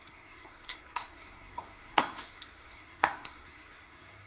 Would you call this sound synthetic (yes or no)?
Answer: yes